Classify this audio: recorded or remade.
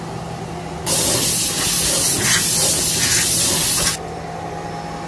recorded